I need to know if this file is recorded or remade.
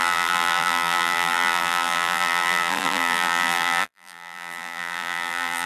remade